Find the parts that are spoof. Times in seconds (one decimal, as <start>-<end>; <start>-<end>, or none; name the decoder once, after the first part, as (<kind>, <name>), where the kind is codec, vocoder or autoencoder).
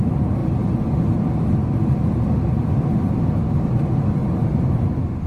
4.2-5.3 (vocoder, BigVGAN v2)